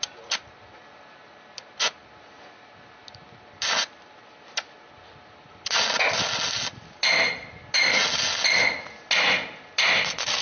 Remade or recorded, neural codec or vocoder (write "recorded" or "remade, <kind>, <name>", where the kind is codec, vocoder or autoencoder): recorded